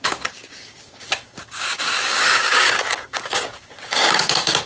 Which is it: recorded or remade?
remade